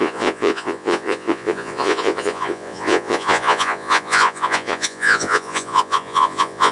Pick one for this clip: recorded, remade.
remade